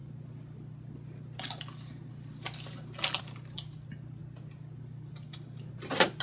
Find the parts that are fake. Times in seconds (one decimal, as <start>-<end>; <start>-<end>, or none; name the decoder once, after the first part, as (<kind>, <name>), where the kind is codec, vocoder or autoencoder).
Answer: none